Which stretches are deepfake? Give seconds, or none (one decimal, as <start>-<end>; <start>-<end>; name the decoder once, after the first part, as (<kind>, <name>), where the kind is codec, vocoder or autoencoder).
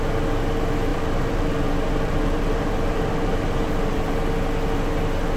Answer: 0.9-4.1 (vocoder, BigVGAN v2)